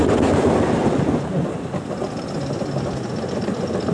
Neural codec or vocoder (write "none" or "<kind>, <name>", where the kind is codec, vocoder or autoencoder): none